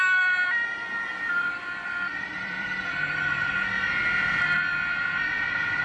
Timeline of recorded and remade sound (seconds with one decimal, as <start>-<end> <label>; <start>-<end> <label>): 0.0-1.1 recorded; 1.1-3.5 remade; 3.5-5.8 recorded